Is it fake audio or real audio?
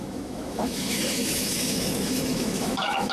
fake